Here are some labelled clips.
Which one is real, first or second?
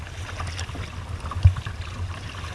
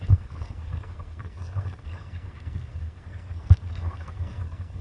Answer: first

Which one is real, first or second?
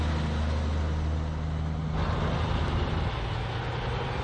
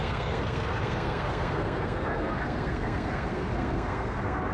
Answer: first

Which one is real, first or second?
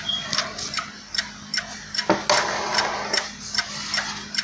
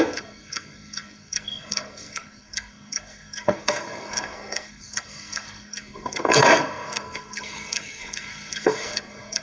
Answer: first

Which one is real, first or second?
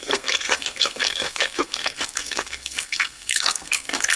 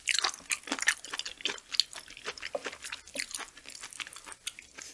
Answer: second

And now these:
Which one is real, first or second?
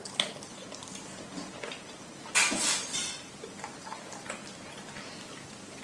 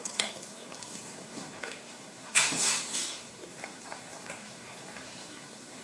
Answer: first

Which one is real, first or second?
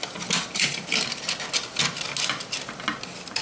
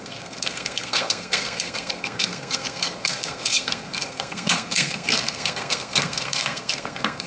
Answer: first